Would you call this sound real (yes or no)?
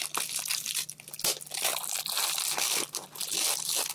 yes